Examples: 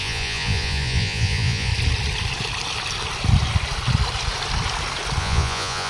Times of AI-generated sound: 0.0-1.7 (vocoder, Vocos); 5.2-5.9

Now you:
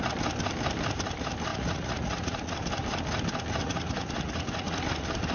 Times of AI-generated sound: 1.5-2.5 (vocoder, Vocos); 3.6-4.8

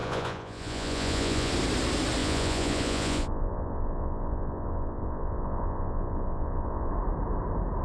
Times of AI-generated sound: 0.0-1.5 (vocoder, Vocos); 2.2-6.9

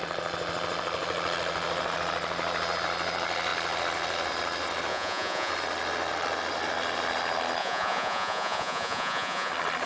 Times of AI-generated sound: 4.9-5.5 (vocoder, Vocos); 7.6-9.5